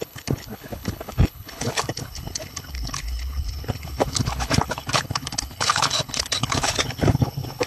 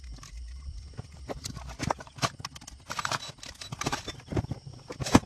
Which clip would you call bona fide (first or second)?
second